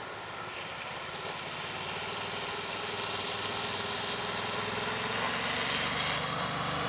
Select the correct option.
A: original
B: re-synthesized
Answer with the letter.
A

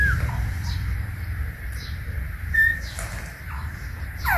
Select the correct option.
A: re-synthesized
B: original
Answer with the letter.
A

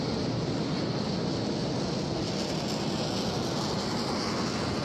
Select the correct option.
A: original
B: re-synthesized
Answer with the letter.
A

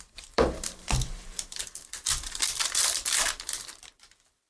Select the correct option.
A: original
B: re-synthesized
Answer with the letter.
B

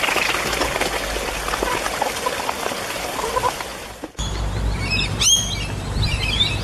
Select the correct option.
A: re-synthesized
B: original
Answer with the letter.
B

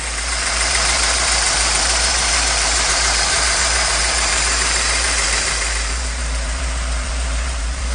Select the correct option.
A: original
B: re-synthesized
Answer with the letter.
B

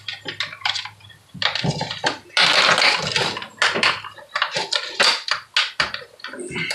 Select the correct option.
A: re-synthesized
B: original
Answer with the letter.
B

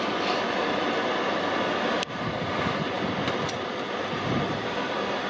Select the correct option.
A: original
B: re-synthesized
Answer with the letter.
A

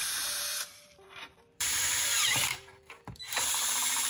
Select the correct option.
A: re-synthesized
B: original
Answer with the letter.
A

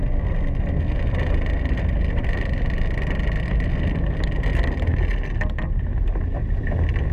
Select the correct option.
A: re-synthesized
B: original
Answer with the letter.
B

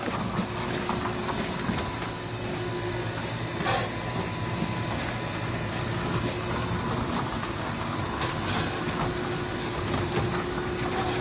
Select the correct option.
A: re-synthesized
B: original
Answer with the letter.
B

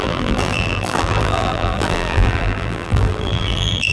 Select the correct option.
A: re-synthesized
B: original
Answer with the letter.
A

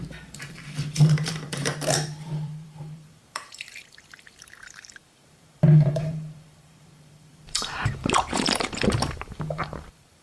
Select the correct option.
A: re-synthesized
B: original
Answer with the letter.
A